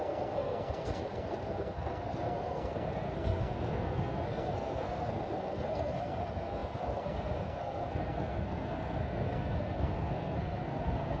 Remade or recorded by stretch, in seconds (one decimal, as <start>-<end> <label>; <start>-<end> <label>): 0.0-11.2 remade